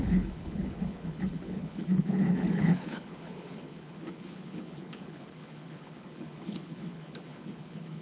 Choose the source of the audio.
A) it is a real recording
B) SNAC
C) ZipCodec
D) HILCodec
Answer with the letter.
D